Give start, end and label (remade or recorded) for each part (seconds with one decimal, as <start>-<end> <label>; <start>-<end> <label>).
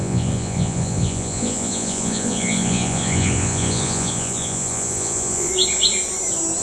0.0-5.5 remade; 5.5-6.6 recorded